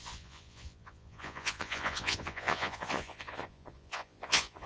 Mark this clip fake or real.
fake